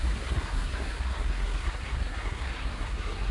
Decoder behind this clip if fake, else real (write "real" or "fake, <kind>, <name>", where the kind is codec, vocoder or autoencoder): fake, codec, SNAC